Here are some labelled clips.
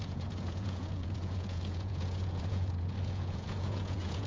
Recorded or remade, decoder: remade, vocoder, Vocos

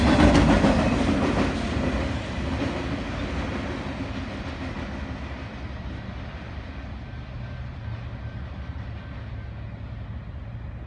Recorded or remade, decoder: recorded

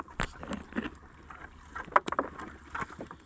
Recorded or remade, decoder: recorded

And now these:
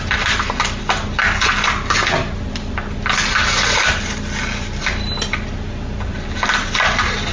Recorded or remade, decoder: recorded